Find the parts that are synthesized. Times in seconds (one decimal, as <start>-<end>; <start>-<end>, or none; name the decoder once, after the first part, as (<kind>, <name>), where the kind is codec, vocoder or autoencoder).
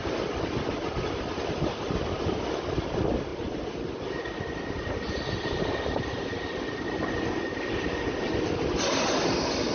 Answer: none